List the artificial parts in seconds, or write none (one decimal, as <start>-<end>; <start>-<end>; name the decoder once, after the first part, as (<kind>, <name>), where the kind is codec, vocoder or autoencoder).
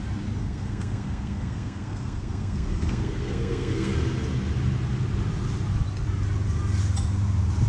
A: 0.4-3.9 (codec, SNAC)